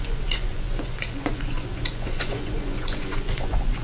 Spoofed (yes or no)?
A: yes